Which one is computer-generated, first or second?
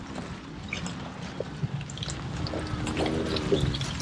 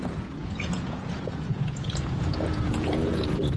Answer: second